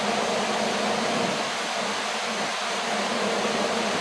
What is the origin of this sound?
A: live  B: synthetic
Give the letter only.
A